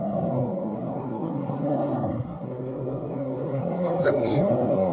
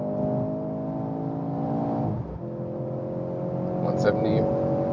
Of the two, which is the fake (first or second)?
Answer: first